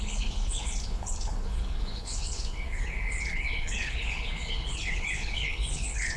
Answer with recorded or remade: remade